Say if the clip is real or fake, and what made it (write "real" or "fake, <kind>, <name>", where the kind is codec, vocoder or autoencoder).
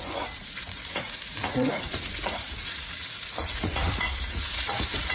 fake, vocoder, Vocos